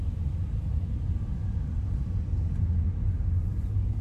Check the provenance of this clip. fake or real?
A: real